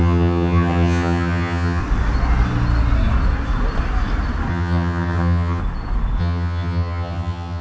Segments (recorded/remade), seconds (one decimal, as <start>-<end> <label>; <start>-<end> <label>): 0.0-1.8 remade; 1.8-4.5 recorded; 4.5-5.6 remade; 5.6-6.2 recorded; 6.2-7.6 remade